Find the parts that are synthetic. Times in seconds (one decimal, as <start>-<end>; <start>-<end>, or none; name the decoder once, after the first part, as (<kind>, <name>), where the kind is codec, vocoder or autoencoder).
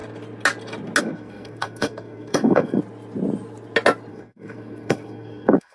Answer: 1.0-2.8 (codec, SNAC); 4.1-5.7